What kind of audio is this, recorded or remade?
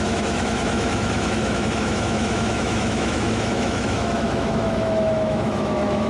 remade